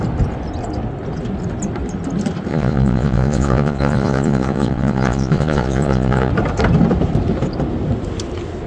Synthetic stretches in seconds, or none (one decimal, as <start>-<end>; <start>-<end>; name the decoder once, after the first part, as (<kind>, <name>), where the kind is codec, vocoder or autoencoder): 2.5-6.3 (vocoder, Vocos)